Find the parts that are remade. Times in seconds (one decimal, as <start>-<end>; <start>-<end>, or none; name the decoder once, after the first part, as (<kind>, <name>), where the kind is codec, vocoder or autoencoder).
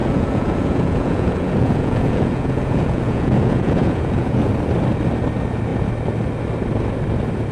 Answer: 0.0-4.5 (vocoder, Vocos)